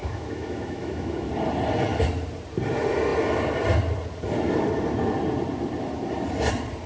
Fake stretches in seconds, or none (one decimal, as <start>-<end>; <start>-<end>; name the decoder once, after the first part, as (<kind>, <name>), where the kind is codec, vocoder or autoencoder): 0.0-1.3 (autoencoder, DAC-VAE)